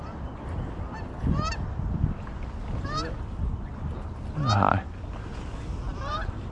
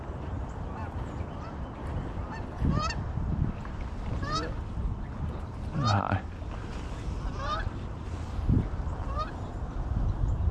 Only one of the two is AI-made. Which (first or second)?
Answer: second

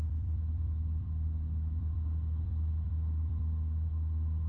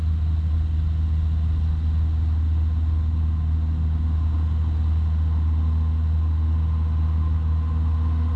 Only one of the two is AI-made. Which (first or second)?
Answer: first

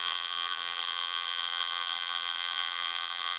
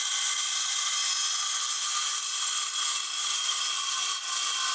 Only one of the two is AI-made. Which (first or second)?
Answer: first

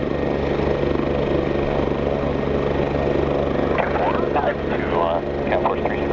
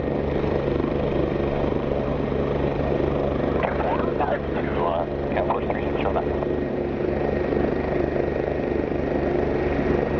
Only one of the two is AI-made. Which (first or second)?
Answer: second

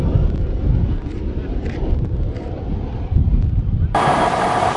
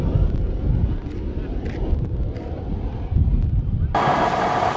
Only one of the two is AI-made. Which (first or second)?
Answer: first